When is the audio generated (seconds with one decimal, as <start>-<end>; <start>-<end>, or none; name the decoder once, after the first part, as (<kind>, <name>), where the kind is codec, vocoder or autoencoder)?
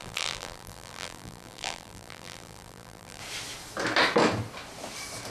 0.0-3.2 (vocoder, BigVGAN v2)